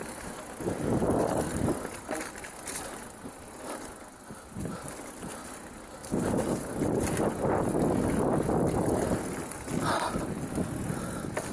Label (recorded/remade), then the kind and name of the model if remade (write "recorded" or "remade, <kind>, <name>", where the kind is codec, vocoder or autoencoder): recorded